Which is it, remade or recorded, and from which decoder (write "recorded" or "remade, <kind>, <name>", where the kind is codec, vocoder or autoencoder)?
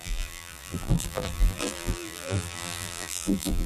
remade, vocoder, BigVGAN v2